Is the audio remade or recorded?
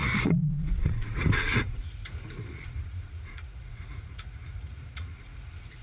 remade